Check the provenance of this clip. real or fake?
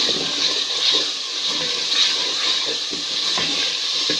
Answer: fake